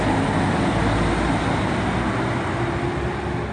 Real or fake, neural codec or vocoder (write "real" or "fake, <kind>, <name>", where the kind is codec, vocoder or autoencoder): real